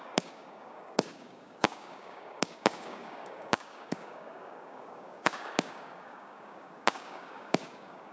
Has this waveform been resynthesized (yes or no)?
yes